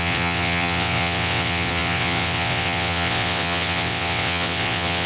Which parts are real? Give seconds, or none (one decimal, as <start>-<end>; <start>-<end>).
none